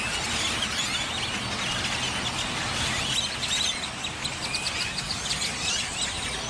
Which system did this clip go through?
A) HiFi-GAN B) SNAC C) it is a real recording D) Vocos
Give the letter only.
C